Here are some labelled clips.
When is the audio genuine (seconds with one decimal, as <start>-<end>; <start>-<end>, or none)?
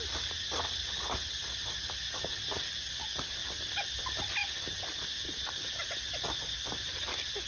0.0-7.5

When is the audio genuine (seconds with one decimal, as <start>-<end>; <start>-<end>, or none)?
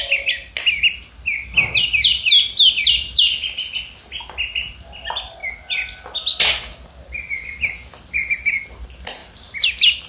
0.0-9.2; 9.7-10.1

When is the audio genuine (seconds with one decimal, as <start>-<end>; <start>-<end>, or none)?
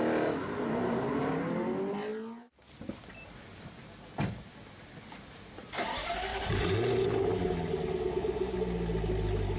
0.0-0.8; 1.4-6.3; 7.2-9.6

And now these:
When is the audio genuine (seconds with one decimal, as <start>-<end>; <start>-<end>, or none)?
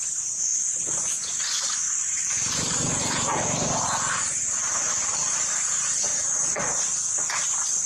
0.5-1.6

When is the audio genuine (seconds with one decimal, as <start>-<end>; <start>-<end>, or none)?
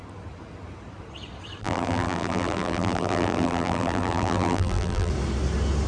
0.0-1.6; 5.1-5.9